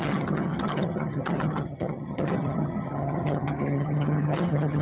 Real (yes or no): no